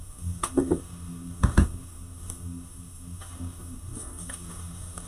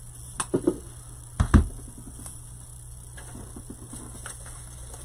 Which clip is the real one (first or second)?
second